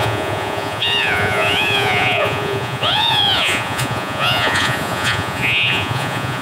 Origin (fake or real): fake